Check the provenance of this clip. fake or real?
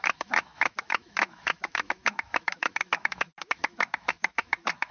fake